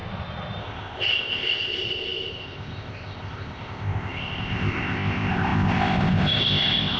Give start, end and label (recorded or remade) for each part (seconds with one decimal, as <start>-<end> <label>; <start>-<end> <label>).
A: 0.0-0.6 recorded; 0.6-7.0 remade